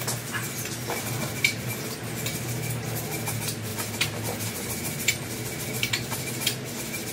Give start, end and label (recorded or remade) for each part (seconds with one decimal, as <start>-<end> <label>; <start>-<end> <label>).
0.0-7.1 recorded